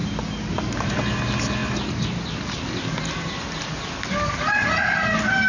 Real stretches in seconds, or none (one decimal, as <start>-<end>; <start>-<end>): 1.0-5.5